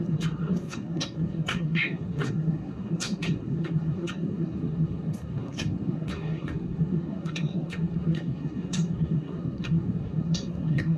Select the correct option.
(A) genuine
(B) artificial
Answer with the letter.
B